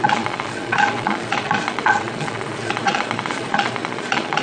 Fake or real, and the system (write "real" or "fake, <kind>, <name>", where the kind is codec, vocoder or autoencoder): fake, vocoder, Vocos